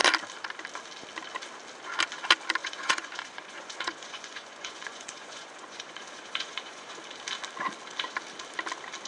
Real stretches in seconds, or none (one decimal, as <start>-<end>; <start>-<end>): 0.0-2.6; 6.9-9.1